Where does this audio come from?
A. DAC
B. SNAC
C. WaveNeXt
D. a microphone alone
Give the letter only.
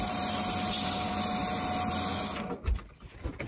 D